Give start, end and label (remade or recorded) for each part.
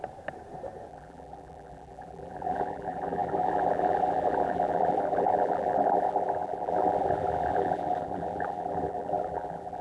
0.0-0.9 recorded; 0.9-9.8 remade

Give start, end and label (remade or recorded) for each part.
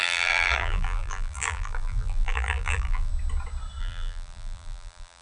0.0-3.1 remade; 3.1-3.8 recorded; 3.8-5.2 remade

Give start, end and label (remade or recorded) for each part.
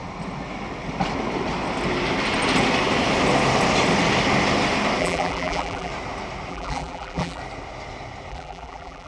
0.0-5.0 recorded; 5.0-5.9 remade; 5.9-6.5 recorded; 6.5-7.4 remade; 7.4-8.3 recorded; 8.3-9.1 remade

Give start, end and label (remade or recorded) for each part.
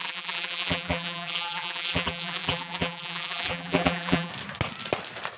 0.0-4.3 remade; 4.3-5.4 recorded